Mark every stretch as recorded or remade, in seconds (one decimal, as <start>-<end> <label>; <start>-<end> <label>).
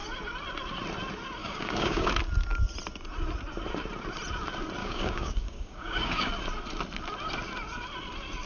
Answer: 0.0-1.4 recorded; 1.4-2.1 remade; 2.1-4.8 recorded; 4.8-6.3 remade; 6.3-8.5 recorded